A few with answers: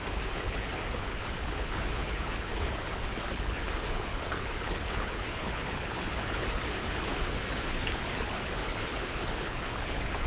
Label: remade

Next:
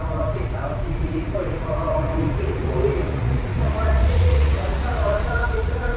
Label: remade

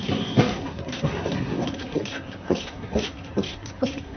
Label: remade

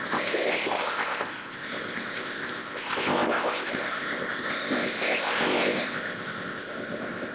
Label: remade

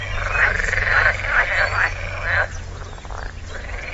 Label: recorded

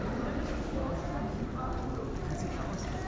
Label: recorded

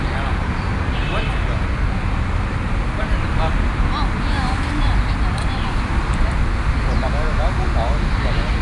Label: recorded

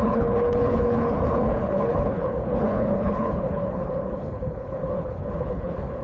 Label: remade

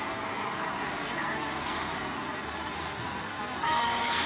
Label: remade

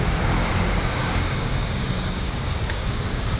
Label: remade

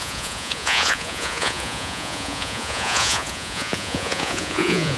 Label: remade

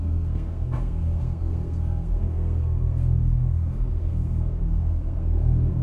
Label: remade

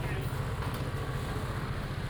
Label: recorded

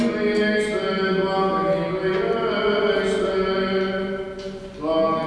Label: recorded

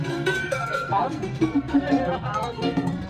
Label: remade